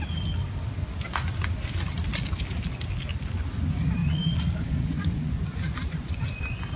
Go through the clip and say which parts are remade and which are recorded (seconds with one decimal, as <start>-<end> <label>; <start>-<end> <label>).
0.0-4.0 recorded; 4.0-6.1 remade; 6.1-6.8 recorded